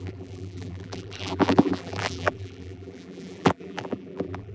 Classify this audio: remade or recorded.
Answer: remade